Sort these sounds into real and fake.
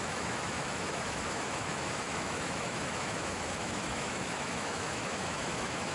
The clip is fake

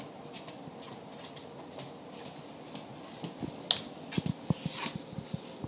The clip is real